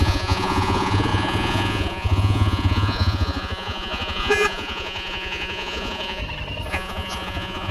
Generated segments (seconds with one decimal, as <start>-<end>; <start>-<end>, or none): 0.0-6.2; 6.7-7.7

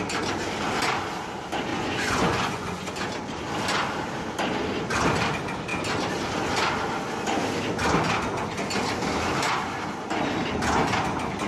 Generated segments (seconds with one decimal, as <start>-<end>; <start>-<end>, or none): 1.7-2.9

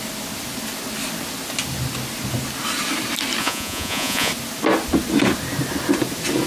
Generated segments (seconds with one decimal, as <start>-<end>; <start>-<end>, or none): 3.4-4.3

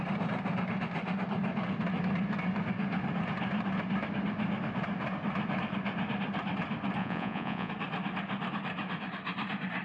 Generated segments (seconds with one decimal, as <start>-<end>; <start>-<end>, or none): 7.0-7.7

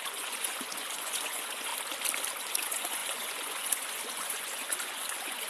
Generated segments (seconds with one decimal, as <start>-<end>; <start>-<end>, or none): 0.0-1.7; 2.4-5.5